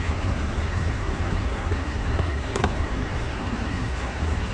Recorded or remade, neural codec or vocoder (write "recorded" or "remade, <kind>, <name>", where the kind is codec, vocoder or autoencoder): remade, codec, SNAC